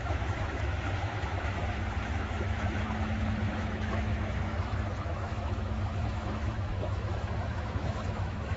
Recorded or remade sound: remade